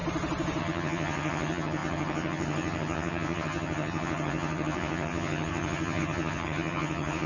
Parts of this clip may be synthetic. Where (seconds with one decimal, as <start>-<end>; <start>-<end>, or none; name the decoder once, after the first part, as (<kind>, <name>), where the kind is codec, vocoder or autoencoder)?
0.6-7.3 (vocoder, HiFi-GAN)